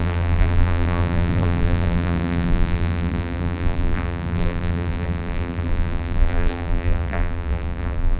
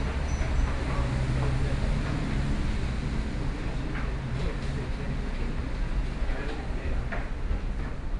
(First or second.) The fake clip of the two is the first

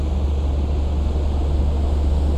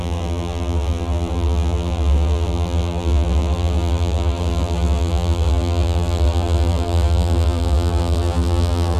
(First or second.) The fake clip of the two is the second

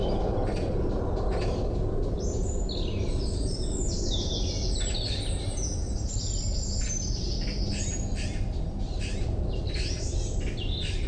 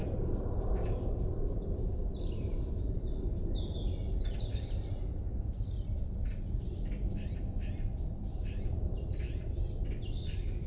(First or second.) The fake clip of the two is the second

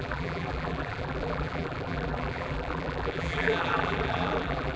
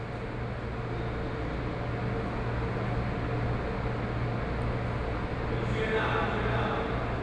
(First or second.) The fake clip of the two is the first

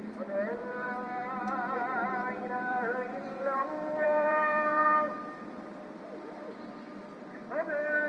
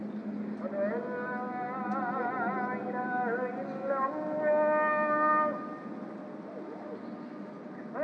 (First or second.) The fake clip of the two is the first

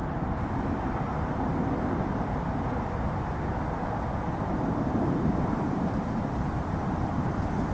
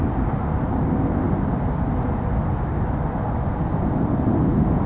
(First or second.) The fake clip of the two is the first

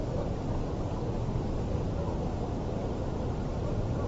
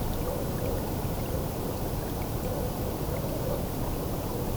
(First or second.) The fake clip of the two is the second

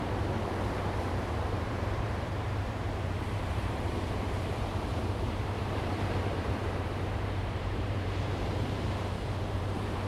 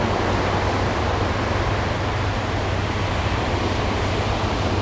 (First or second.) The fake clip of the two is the first